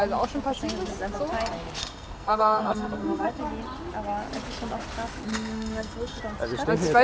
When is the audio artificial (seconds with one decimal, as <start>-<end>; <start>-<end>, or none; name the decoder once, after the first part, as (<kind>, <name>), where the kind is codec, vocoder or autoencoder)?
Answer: 1.8-3.4 (codec, SNAC); 5.3-6.2